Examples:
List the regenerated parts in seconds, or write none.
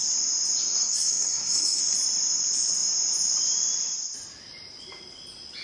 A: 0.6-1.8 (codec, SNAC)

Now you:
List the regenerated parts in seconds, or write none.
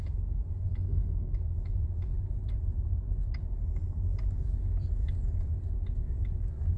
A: 0.7-1.3 (codec, SNAC)